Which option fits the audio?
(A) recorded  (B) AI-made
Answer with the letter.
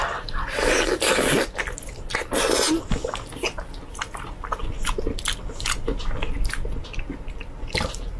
A